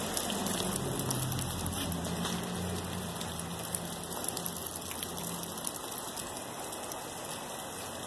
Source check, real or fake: real